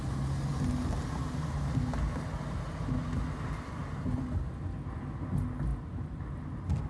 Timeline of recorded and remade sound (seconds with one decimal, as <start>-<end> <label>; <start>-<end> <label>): 0.0-6.9 recorded